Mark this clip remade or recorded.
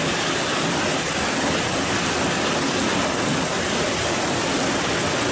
recorded